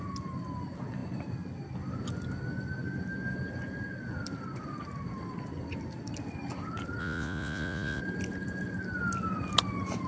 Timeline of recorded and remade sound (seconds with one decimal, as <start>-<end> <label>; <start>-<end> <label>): 0.0-7.0 recorded; 7.0-8.0 remade; 8.0-10.1 recorded